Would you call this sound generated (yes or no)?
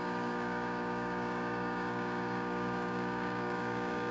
yes